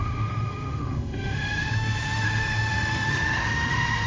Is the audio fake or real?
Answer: fake